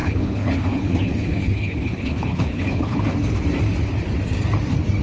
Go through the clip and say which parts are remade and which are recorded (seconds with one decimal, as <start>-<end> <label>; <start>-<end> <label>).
0.0-3.0 remade; 3.0-5.0 recorded